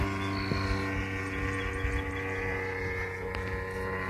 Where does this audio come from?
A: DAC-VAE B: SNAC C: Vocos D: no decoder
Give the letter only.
D